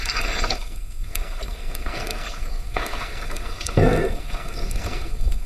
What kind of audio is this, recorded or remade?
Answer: remade